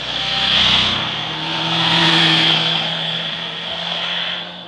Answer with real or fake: fake